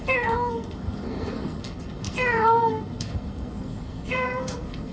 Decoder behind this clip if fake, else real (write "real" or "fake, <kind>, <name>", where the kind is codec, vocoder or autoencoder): fake, codec, SNAC